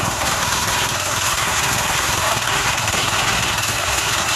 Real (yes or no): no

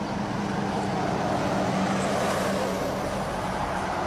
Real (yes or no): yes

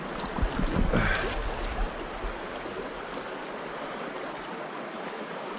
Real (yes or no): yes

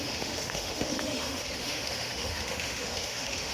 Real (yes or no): no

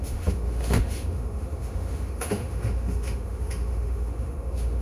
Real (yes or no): no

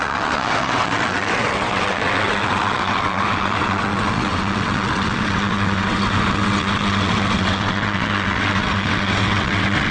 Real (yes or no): no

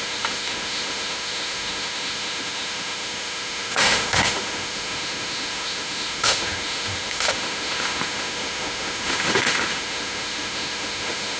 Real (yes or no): no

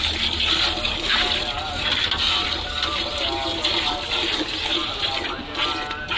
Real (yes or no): yes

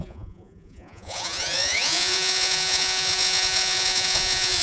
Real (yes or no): no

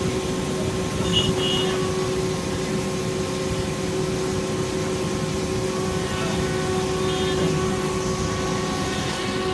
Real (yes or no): yes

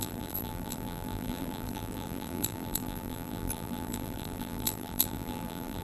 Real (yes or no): no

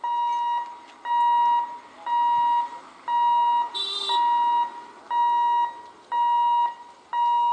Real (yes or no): yes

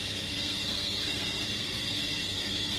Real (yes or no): no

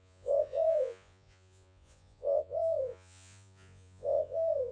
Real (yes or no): no